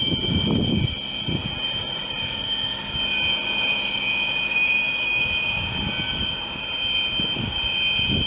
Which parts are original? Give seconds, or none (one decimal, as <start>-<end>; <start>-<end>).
0.0-4.5; 5.2-8.3